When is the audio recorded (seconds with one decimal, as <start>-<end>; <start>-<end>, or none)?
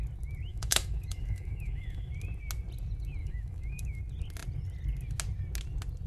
0.0-0.5; 2.1-3.2; 4.0-6.1